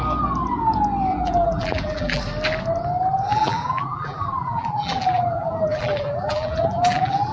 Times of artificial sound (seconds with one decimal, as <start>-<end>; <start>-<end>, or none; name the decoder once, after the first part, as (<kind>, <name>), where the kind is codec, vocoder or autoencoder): 1.1-2.2 (vocoder, BigVGAN v2); 3.3-7.3